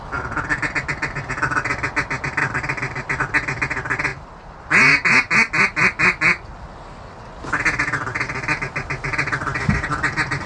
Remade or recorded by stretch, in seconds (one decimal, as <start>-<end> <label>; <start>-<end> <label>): 0.0-2.4 recorded; 2.4-3.2 remade; 3.2-4.1 recorded; 4.1-4.7 remade; 4.7-10.5 recorded